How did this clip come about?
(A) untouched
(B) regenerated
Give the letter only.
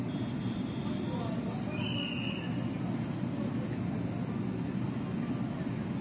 A